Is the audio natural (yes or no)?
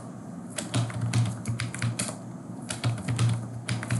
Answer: yes